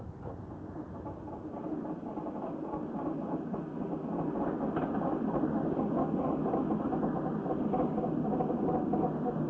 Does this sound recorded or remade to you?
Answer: recorded